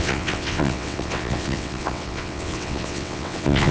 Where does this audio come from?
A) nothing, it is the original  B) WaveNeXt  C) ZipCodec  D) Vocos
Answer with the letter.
B